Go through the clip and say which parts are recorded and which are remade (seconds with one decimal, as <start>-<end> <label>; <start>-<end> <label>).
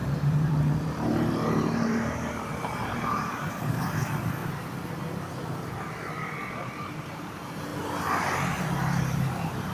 0.0-4.4 remade; 4.4-6.5 recorded; 6.5-7.7 remade; 7.7-8.6 recorded; 8.6-9.7 remade